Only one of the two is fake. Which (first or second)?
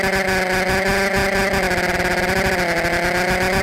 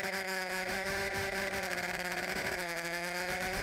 second